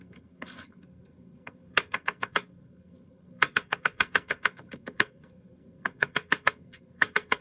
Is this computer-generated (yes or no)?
yes